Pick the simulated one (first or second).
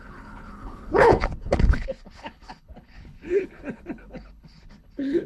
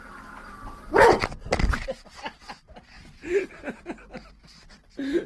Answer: first